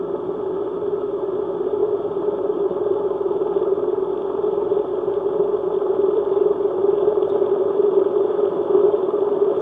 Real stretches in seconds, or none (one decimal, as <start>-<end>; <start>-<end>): 0.0-1.8; 4.8-5.5; 6.3-6.8; 9.2-9.6